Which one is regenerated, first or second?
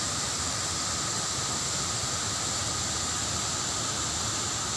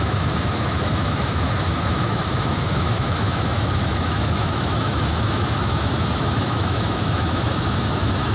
second